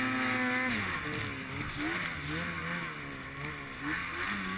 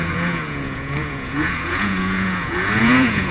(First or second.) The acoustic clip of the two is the first